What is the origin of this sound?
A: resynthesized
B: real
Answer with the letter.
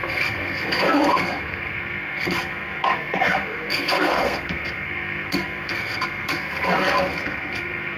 A